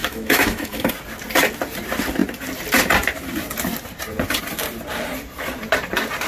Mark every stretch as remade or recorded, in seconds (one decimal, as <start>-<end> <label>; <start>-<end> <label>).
0.0-0.9 remade; 0.9-6.3 recorded